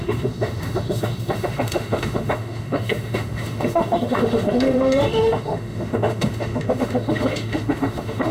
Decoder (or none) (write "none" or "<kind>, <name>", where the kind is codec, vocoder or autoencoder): autoencoder, DAC-VAE